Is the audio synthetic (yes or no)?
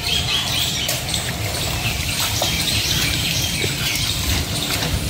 yes